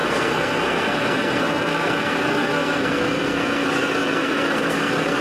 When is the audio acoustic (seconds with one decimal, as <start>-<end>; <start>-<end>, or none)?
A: none